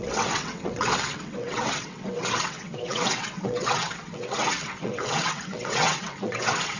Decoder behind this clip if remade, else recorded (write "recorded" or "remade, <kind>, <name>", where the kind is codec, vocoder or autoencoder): remade, vocoder, WaveNeXt